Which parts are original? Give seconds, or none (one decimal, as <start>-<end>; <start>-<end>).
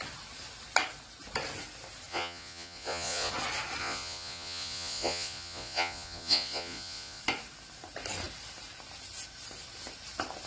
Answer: 0.0-2.1; 3.3-3.8; 7.2-10.5